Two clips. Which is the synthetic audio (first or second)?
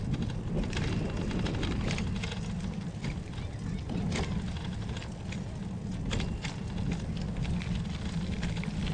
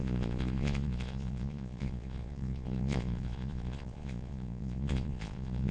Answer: second